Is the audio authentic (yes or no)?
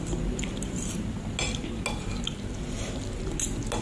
yes